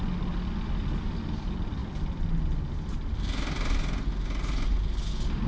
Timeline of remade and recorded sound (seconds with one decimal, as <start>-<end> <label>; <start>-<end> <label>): 0.0-5.5 recorded